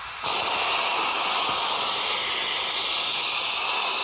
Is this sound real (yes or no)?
yes